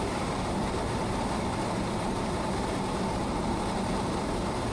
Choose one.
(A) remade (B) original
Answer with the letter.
A